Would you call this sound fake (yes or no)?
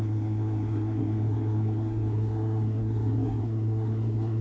yes